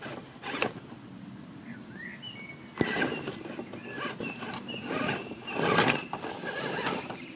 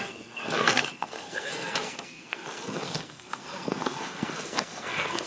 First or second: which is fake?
second